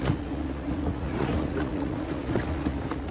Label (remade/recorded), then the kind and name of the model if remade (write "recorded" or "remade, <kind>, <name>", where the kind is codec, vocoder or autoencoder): remade, vocoder, Vocos